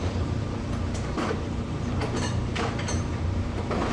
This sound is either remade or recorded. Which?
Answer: remade